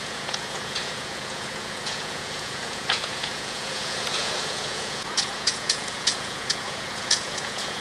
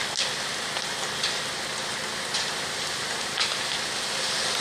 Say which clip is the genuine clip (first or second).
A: second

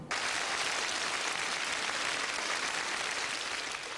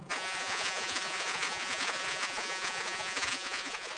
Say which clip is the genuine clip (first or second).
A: first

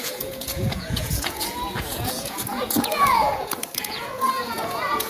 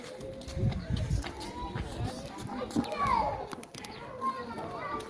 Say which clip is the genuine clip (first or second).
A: second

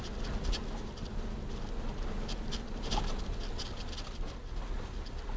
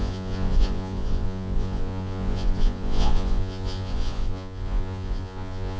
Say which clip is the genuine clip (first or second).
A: first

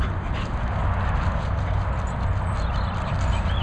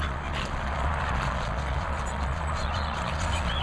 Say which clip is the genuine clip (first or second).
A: first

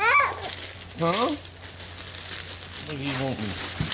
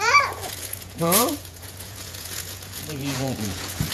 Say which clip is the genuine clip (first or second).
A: first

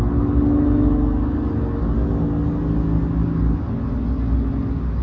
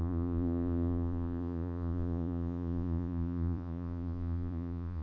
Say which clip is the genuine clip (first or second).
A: first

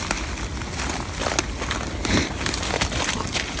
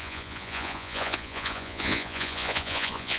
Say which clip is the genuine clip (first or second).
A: first